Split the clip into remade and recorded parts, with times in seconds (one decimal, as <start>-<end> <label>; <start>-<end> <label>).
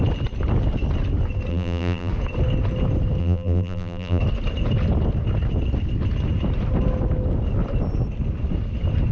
0.0-1.5 recorded; 1.5-2.1 remade; 2.1-3.2 recorded; 3.2-4.2 remade; 4.2-9.1 recorded